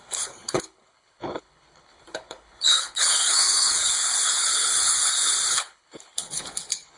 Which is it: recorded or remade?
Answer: remade